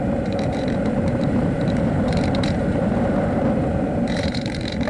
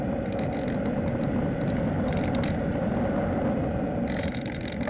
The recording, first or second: second